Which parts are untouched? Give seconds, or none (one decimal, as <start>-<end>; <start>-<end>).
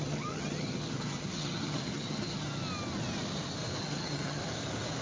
2.6-3.8; 4.4-5.0